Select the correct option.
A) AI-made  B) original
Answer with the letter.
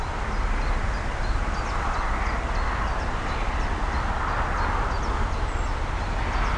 B